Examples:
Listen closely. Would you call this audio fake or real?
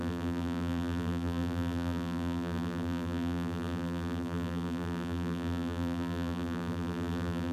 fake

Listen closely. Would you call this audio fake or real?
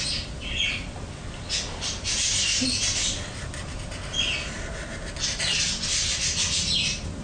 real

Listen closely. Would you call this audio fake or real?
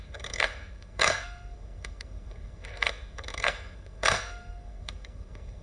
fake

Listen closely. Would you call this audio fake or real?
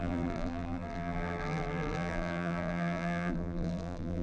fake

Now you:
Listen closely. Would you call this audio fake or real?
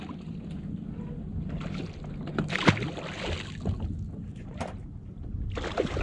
real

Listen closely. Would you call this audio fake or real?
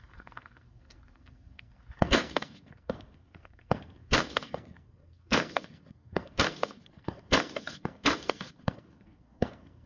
fake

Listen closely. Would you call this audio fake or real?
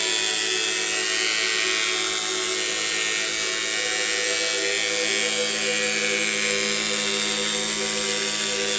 real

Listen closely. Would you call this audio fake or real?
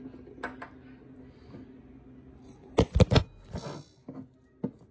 real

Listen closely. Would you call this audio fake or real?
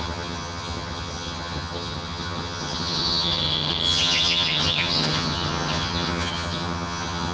fake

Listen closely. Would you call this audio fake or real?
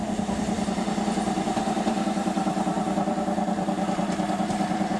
fake